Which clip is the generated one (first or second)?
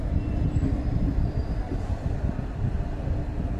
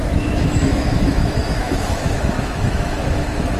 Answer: second